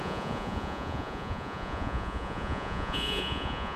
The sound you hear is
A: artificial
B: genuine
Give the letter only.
A